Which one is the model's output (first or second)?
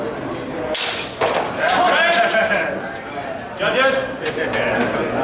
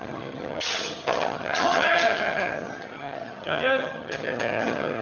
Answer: second